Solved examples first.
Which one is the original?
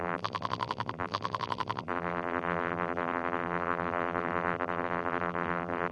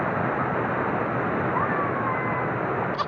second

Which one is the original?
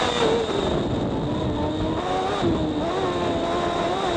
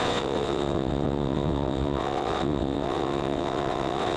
first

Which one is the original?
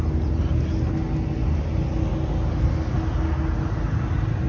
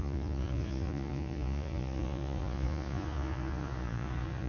first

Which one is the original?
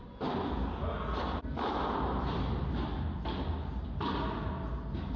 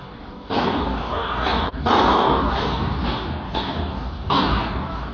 first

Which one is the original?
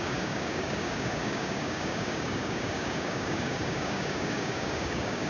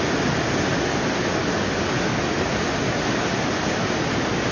second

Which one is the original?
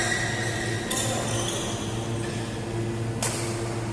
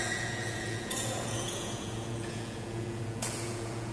first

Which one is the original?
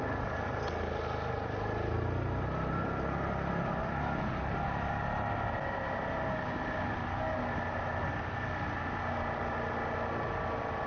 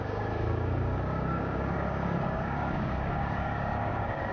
first